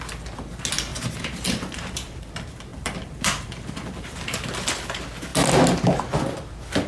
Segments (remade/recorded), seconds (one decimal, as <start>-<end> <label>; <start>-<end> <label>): 0.0-0.9 recorded; 0.9-2.3 remade; 2.3-2.7 recorded; 2.7-4.4 remade; 4.4-6.9 recorded